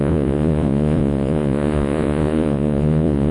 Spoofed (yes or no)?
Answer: yes